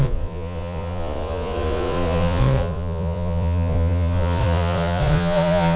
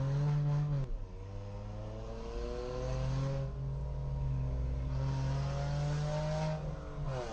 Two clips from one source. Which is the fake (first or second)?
first